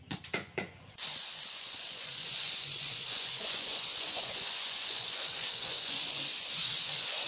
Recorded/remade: remade